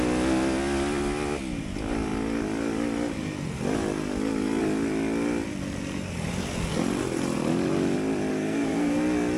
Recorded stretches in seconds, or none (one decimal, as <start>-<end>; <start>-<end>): 0.0-8.3; 9.0-9.4